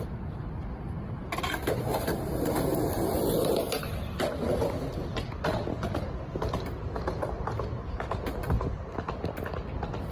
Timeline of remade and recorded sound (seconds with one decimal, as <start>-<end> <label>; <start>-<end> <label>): 0.0-10.1 recorded

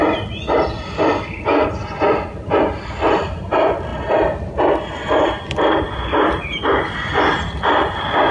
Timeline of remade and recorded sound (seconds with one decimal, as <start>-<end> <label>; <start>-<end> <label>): 0.0-8.3 recorded

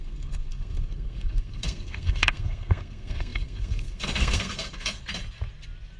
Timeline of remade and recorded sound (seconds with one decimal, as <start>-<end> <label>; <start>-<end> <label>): 0.0-5.0 remade; 5.0-6.0 recorded

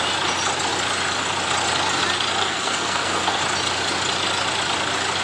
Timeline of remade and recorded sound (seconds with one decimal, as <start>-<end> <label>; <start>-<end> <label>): 0.0-2.4 recorded; 2.4-3.4 remade; 3.4-5.2 recorded

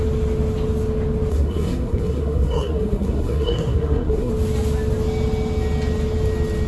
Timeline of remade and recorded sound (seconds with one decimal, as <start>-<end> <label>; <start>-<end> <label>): 0.0-1.3 recorded; 1.3-4.3 remade; 4.3-6.7 recorded

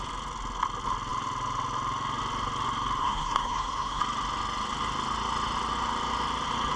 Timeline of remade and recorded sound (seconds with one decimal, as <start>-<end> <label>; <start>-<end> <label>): 0.0-3.0 recorded; 3.0-4.0 remade; 4.0-6.8 recorded

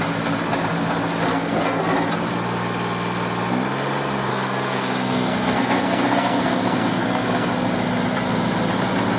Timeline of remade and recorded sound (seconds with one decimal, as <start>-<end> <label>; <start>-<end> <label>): 0.0-1.3 recorded; 1.3-1.8 remade; 1.8-4.3 recorded; 4.3-7.5 remade; 7.5-9.2 recorded